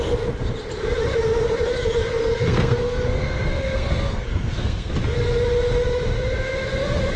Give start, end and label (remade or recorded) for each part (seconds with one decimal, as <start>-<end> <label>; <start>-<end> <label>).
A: 0.0-2.2 recorded; 2.2-4.9 remade; 4.9-7.2 recorded